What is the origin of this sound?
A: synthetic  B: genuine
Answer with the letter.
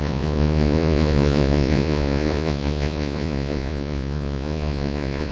A